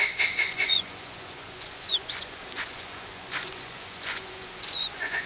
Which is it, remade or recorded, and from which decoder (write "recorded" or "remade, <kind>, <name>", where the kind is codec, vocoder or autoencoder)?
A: remade, vocoder, Vocos